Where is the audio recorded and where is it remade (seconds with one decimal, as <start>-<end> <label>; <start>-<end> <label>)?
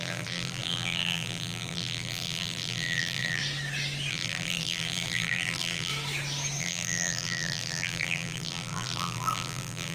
0.0-3.4 remade; 3.4-4.1 recorded; 4.1-5.9 remade; 5.9-6.6 recorded; 6.6-9.9 remade